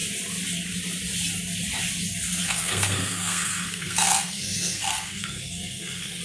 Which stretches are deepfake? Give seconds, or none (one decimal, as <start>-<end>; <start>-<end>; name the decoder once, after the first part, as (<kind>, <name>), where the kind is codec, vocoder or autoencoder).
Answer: 2.4-6.2 (codec, SNAC)